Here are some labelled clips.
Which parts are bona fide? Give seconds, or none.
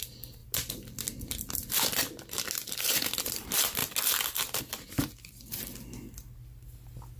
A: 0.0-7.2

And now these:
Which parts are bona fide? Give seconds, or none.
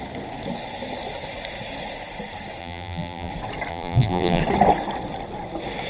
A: 0.0-2.6; 3.3-3.7; 4.4-5.9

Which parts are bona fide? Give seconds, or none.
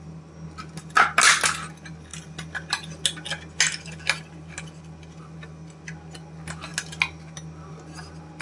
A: 0.0-8.4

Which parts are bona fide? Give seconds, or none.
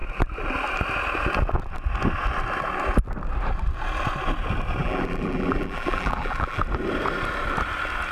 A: 0.0-4.8; 6.6-8.1